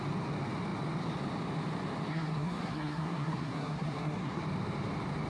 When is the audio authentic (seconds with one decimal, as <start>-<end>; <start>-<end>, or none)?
0.0-2.1; 4.4-5.3